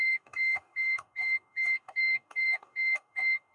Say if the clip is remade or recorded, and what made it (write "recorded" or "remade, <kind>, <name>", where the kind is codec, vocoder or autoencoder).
remade, codec, DAC